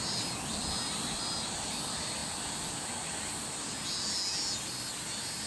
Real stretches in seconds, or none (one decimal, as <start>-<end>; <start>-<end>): 0.0-5.5